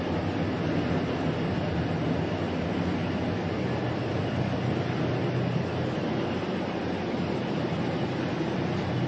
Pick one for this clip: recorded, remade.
recorded